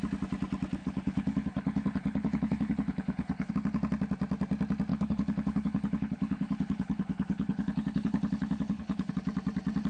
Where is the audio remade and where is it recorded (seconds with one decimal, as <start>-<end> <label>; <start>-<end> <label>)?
0.0-0.8 recorded; 0.8-3.5 remade; 3.5-4.9 recorded; 4.9-9.1 remade; 9.1-9.9 recorded